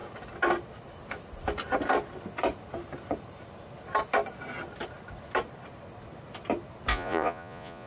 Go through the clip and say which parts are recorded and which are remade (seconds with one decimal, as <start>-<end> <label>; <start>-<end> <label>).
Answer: 0.0-6.9 recorded; 6.9-7.9 remade